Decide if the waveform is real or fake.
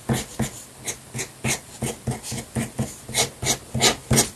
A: real